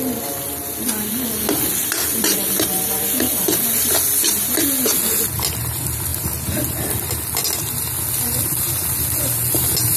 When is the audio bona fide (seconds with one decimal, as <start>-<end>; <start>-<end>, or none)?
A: 0.0-1.8; 3.9-10.0